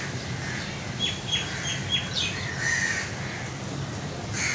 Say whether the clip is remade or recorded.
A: recorded